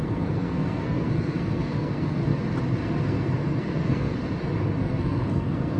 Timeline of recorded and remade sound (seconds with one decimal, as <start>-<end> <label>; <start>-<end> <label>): 0.0-2.2 remade; 2.2-2.8 recorded; 2.8-4.2 remade; 4.2-4.8 recorded; 4.8-5.8 remade